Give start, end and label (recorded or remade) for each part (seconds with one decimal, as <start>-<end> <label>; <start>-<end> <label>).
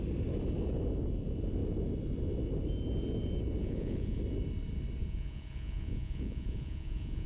0.0-3.6 recorded; 3.6-4.2 remade; 4.2-5.0 recorded; 5.0-7.3 remade